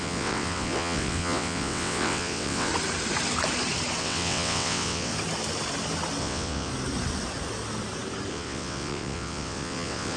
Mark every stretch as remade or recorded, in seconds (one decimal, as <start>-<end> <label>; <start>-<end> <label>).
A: 0.0-2.7 remade; 2.7-4.0 recorded; 4.0-5.1 remade; 5.1-6.2 recorded; 6.2-6.7 remade; 6.7-8.3 recorded; 8.3-10.2 remade